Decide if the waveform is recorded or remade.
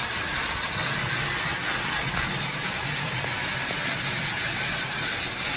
recorded